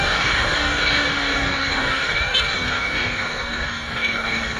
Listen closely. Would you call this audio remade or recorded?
remade